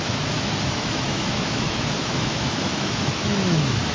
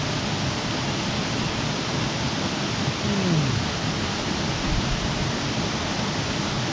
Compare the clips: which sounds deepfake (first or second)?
first